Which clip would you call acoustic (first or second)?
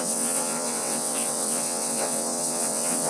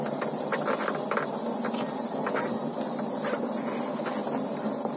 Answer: second